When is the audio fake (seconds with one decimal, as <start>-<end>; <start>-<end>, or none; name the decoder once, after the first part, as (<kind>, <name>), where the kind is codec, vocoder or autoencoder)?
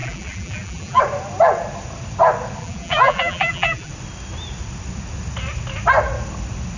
0.0-1.0 (vocoder, BigVGAN v2); 2.6-3.9